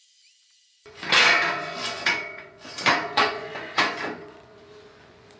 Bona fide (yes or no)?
no